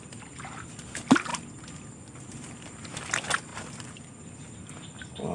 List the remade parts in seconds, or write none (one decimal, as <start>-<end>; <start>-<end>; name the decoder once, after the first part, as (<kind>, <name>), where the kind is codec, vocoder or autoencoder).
none